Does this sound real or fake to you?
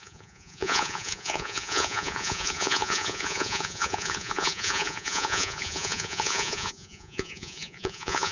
fake